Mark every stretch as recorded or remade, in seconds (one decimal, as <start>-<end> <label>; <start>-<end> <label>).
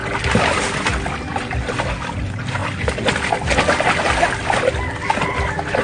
0.0-5.8 recorded